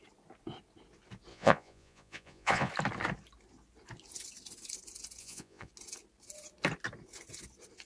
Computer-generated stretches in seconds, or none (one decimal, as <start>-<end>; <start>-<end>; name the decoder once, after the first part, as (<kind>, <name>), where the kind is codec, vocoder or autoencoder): 1.3-2.7 (vocoder, Vocos); 5.2-5.7